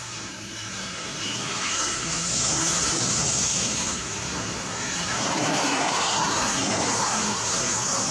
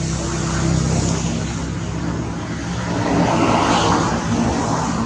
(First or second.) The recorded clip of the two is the second